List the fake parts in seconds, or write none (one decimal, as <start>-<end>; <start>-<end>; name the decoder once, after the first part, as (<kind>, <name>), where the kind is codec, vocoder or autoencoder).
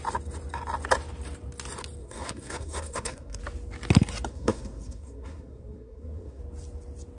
2.0-3.4 (codec, SNAC); 4.3-6.4